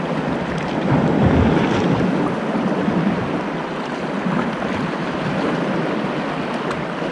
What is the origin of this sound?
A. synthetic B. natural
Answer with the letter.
B